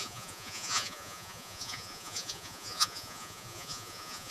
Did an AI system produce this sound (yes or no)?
yes